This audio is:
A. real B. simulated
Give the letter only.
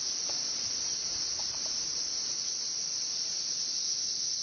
B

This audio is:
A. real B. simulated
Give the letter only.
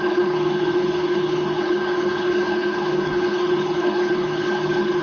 B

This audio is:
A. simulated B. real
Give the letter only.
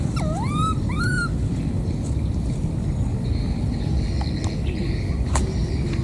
B